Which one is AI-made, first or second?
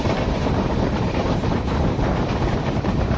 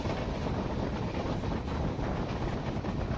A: first